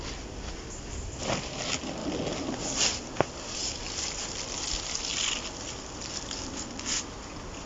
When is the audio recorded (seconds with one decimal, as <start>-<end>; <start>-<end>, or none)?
0.0-7.7